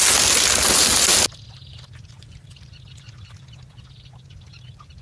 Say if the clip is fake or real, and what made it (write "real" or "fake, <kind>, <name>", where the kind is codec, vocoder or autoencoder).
real